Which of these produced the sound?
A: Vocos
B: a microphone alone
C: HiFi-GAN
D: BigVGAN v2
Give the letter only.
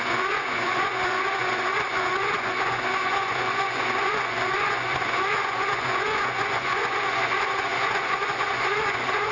A